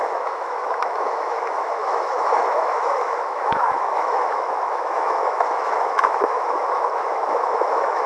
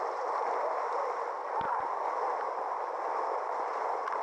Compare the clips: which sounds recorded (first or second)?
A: second